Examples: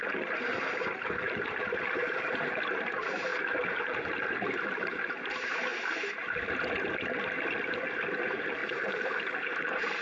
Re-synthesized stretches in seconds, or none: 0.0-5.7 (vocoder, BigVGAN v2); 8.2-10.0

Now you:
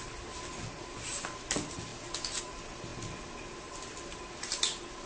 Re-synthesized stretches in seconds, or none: none

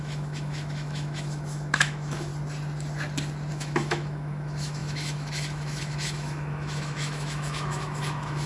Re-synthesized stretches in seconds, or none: 0.0-2.3 (autoencoder, DAC-VAE); 3.5-8.5

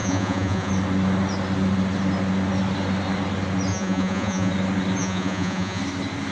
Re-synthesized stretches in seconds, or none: 0.0-0.7 (vocoder, Vocos); 3.7-4.5; 5.0-5.8

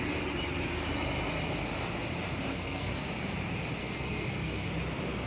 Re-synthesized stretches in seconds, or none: 2.5-3.1 (codec, SNAC); 3.8-4.7

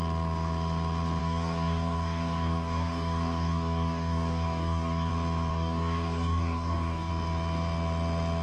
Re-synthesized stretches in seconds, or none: 1.2-5.1 (codec, DAC); 5.5-7.1